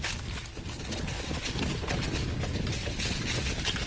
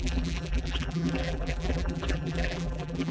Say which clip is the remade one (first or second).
second